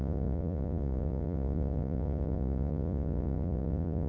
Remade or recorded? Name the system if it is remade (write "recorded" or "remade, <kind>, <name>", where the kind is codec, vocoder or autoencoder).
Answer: remade, vocoder, Vocos